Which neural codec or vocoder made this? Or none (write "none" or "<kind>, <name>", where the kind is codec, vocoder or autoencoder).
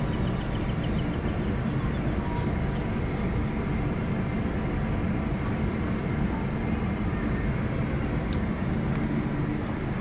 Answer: none